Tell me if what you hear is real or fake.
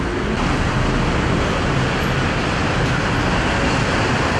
real